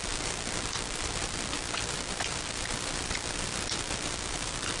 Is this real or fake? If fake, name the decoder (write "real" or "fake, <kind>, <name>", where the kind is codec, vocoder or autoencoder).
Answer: fake, vocoder, BigVGAN v2